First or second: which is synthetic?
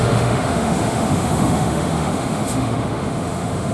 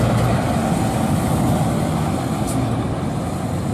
first